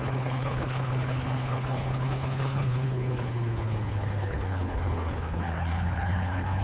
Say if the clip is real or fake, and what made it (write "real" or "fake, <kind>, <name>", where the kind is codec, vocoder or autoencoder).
fake, codec, HILCodec